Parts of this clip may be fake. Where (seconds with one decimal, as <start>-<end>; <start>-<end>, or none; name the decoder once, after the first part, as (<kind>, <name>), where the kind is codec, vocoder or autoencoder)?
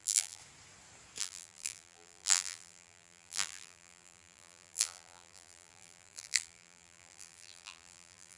0.0-0.4 (vocoder, BigVGAN v2); 1.2-8.4